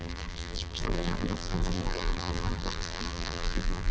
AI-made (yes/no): yes